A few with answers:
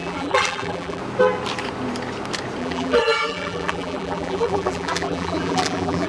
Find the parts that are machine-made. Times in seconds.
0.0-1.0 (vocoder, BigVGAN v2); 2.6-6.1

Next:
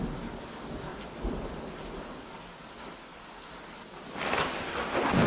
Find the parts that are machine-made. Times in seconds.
0.9-1.7 (vocoder, BigVGAN v2); 3.1-4.7

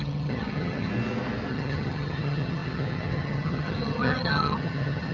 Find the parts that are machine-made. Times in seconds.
0.0-0.9 (vocoder, HiFi-GAN); 1.5-5.1

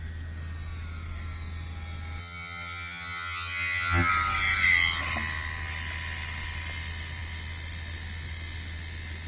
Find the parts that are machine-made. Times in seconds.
2.2-4.1 (vocoder, HiFi-GAN)

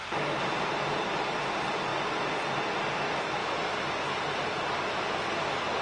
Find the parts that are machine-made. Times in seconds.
none